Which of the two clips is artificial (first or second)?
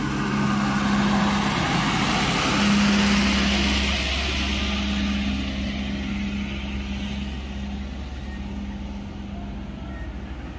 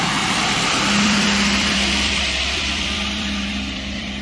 second